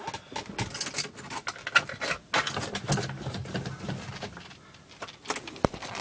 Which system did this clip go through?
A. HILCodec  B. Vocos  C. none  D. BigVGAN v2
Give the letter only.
C